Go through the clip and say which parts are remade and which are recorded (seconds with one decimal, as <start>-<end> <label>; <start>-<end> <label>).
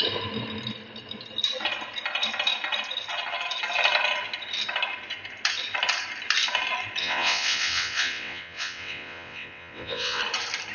0.0-7.0 recorded; 7.0-10.2 remade; 10.2-10.7 recorded